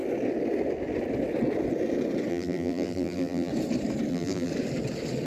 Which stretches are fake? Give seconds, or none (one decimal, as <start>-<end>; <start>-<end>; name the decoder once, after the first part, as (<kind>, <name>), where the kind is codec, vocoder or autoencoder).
2.3-3.5 (vocoder, BigVGAN v2); 4.1-4.5